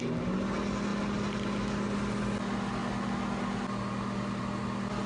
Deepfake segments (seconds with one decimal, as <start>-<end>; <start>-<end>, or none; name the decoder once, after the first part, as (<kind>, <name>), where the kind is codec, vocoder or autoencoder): none

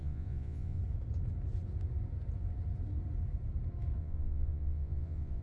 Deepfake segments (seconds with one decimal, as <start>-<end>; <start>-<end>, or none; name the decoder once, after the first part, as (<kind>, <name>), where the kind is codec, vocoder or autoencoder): 0.0-0.8 (vocoder, Vocos); 4.0-5.4

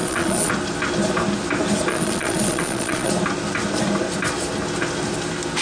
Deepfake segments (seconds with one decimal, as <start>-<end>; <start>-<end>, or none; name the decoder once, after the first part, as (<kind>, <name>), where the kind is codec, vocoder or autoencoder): 0.0-0.5 (vocoder, Vocos); 1.9-3.1

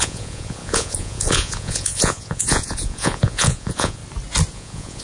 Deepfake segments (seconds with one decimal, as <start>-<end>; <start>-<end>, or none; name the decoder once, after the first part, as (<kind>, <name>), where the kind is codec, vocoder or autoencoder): 0.0-4.0 (vocoder, Vocos); 4.5-5.0

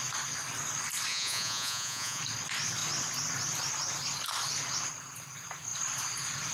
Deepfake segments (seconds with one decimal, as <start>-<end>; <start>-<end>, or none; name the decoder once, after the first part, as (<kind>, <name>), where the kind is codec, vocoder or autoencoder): 1.1-2.2 (vocoder, Vocos)

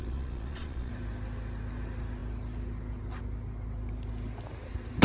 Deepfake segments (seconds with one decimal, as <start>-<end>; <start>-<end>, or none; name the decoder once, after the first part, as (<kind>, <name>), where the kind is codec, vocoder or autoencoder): 0.0-0.9 (vocoder, Vocos)